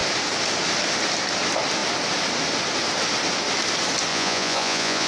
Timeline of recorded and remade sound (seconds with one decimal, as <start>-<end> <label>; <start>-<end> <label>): 0.0-4.1 recorded; 4.1-5.1 remade